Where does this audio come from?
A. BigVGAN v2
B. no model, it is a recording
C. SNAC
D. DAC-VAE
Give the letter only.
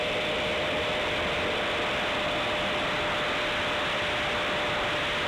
B